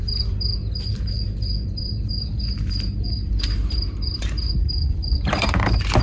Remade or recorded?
remade